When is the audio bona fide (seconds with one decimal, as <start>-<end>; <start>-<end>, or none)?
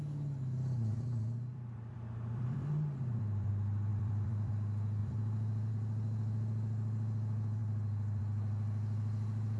0.0-1.5; 3.5-3.9; 4.5-5.0; 5.7-7.6; 8.2-9.6